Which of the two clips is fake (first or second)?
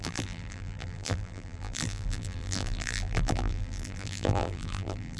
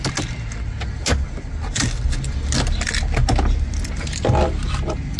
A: first